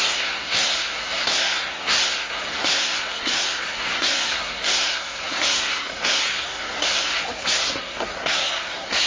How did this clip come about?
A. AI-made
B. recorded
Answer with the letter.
A